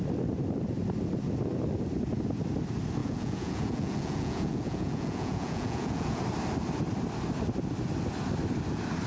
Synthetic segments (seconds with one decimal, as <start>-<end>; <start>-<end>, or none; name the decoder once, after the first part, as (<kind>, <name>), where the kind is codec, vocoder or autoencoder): 3.0-6.2 (vocoder, Vocos)